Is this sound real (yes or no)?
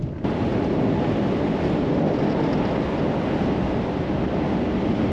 yes